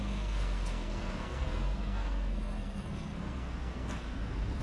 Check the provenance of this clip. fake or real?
fake